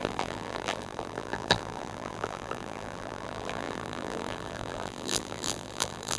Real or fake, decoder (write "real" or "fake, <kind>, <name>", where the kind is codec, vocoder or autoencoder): fake, vocoder, BigVGAN v2